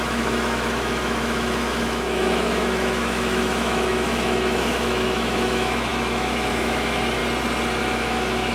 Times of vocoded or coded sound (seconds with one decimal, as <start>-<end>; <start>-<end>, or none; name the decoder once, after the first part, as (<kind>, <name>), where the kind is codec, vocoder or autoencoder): 0.0-7.2 (autoencoder, DAC-VAE); 7.8-8.5